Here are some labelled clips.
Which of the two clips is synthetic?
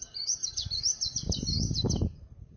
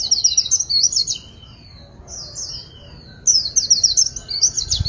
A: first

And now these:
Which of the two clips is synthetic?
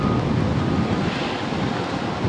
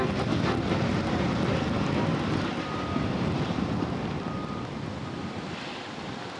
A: second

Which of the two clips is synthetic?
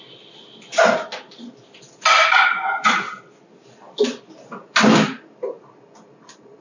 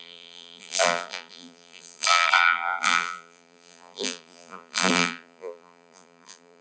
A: second